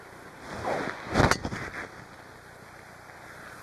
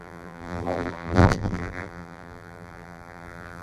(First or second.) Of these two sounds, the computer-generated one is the second